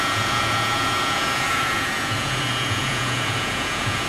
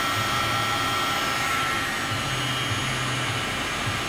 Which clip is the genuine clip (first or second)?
second